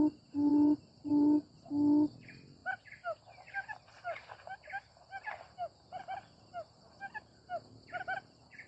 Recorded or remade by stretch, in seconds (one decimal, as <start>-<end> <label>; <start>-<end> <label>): 0.0-0.5 recorded; 0.5-1.1 remade; 1.1-8.7 recorded